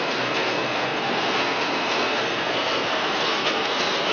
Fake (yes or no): yes